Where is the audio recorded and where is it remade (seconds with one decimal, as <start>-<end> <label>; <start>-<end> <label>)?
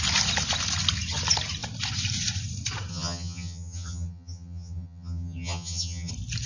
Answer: 0.0-2.9 recorded; 2.9-6.1 remade; 6.1-6.5 recorded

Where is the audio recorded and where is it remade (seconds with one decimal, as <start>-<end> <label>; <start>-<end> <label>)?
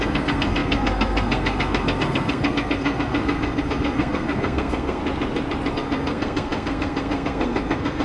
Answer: 0.0-5.0 remade; 5.0-5.7 recorded; 5.7-8.0 remade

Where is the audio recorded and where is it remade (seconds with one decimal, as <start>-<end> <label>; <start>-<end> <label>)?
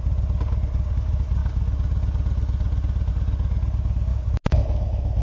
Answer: 0.0-4.1 recorded; 4.1-5.2 remade